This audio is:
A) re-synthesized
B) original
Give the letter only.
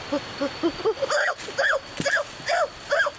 B